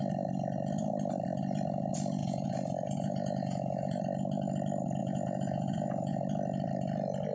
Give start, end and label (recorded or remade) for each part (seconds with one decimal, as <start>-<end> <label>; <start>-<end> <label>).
0.0-2.2 recorded; 2.2-4.0 remade; 4.0-5.0 recorded; 5.0-6.2 remade; 6.2-7.3 recorded